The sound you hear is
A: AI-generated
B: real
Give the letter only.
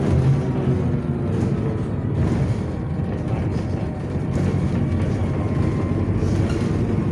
B